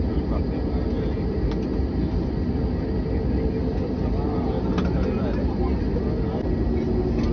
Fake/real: real